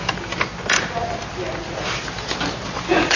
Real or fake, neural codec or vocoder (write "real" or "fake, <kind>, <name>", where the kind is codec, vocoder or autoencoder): real